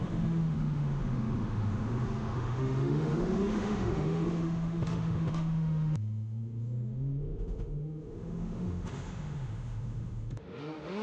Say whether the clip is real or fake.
fake